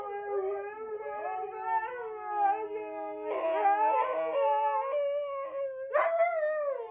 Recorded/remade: recorded